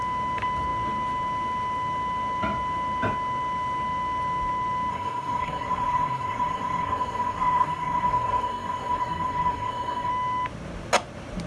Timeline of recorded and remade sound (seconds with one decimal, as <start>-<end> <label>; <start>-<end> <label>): 0.0-4.9 recorded; 4.9-10.1 remade; 10.1-11.5 recorded